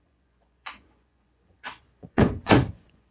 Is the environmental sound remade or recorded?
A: remade